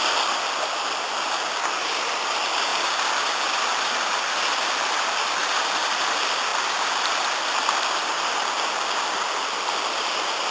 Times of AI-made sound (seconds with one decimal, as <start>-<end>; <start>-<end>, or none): none